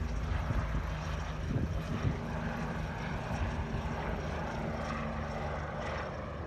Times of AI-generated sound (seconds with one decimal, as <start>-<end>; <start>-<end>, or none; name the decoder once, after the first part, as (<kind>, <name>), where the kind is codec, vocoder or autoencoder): none

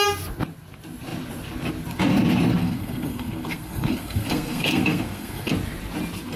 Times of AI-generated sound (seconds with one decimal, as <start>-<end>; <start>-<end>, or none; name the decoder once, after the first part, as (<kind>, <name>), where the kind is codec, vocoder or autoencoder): 2.6-5.5 (codec, SNAC)

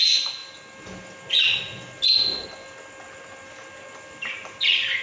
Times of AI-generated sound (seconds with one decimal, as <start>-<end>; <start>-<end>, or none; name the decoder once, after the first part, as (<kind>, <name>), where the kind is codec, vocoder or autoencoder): none

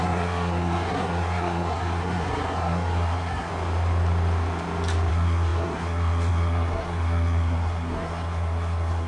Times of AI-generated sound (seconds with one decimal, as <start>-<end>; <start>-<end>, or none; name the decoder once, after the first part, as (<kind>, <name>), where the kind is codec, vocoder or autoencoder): 0.0-3.5 (codec, SNAC); 5.1-9.1